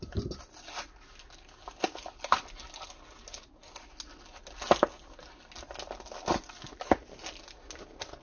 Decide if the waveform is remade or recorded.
recorded